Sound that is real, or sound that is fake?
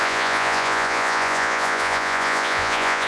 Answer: fake